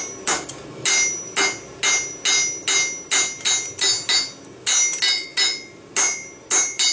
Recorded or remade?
recorded